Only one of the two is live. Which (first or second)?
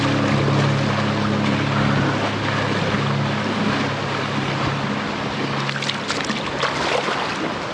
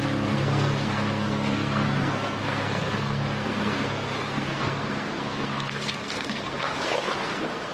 first